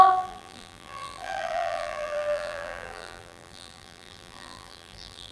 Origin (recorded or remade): remade